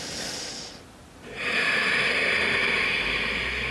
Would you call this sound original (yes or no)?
yes